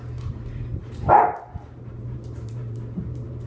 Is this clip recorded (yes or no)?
no